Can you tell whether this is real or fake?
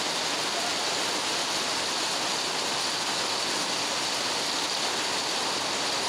real